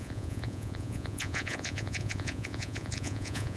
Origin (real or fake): fake